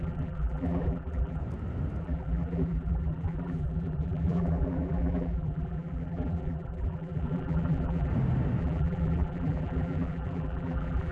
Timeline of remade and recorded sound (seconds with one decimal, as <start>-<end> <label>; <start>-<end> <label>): 0.0-1.4 remade; 1.4-2.0 recorded; 2.0-8.1 remade; 8.1-8.6 recorded; 8.6-11.1 remade